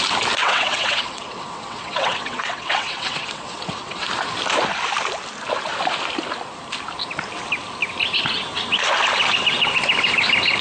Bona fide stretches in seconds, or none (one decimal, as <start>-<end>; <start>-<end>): 0.0-0.4; 4.1-10.6